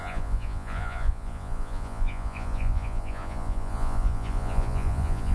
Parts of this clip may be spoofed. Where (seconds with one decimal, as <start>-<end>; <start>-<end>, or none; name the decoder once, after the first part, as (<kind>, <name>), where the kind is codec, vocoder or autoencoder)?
0.0-5.3 (vocoder, Vocos)

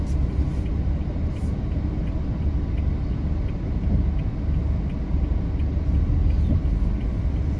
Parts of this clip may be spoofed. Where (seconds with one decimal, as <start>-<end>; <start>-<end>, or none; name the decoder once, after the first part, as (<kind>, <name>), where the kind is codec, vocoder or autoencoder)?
none